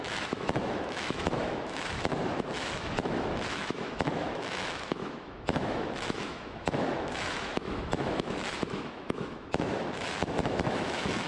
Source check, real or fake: fake